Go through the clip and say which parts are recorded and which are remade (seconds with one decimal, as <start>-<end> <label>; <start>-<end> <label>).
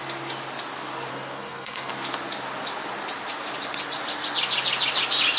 0.0-1.1 recorded; 1.1-1.9 remade; 1.9-5.4 recorded